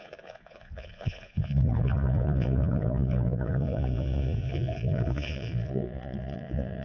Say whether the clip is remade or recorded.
remade